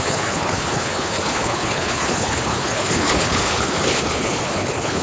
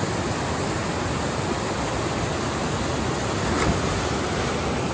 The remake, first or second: first